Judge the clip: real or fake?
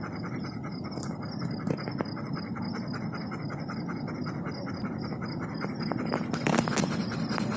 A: real